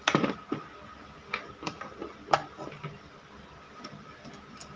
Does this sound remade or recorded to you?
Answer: recorded